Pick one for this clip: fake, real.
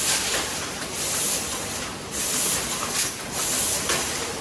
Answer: real